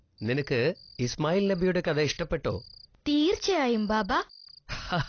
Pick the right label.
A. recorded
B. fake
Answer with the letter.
A